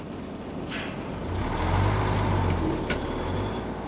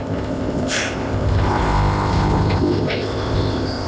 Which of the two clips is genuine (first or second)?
first